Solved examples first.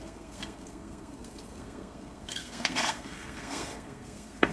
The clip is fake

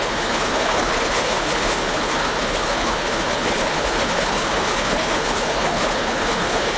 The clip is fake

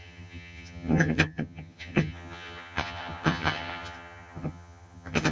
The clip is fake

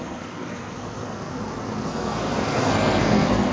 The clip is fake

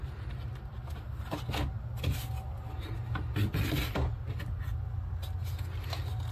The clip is real